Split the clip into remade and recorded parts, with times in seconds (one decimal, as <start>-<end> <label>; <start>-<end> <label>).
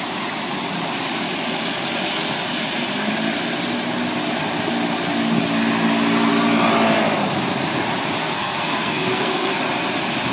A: 0.0-8.2 recorded; 8.2-9.6 remade; 9.6-10.3 recorded